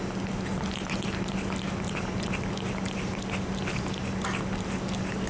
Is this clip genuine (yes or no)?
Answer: yes